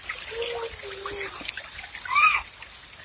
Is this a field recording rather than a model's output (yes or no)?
yes